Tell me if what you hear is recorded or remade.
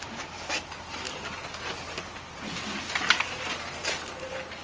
recorded